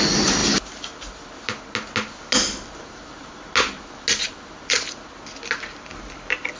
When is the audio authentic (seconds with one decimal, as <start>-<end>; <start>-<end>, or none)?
0.0-6.6